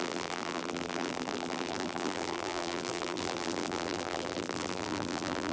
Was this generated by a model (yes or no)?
yes